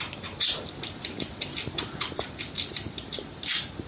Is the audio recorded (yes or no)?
no